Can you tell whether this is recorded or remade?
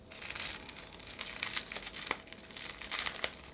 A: recorded